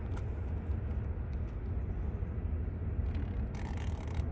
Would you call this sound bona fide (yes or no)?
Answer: yes